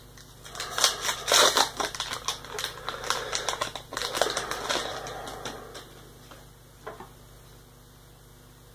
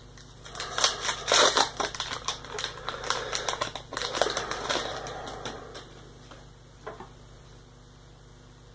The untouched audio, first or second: first